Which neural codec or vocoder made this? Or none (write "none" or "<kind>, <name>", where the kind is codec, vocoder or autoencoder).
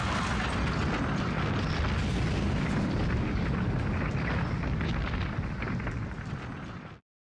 none